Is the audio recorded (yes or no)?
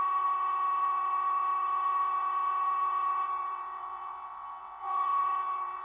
no